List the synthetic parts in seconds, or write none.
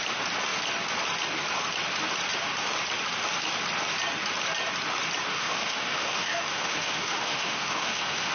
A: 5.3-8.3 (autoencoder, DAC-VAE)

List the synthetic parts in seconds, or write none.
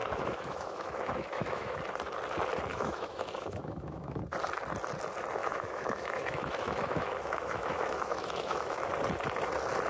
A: 0.0-1.8 (autoencoder, DAC-VAE); 2.7-4.2; 5.4-8.9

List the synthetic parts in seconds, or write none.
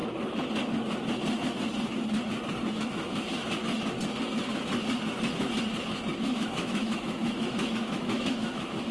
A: 2.7-3.4 (autoencoder, DAC-VAE); 6.2-8.9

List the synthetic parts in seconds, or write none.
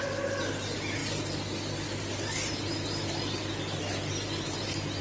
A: none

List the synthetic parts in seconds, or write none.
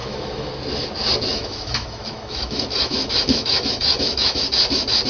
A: 0.0-0.5 (autoencoder, DAC-VAE); 1.3-4.4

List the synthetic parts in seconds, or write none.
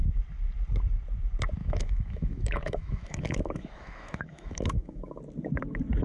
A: 1.6-5.2 (autoencoder, DAC-VAE)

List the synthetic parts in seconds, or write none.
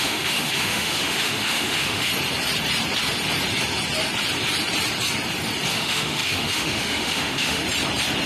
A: 0.0-2.1 (autoencoder, DAC-VAE); 5.7-7.6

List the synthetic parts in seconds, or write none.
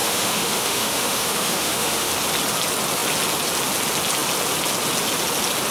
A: 0.0-2.1 (autoencoder, DAC-VAE)